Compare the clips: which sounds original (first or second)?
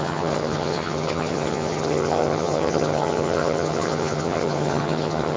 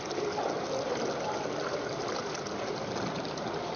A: second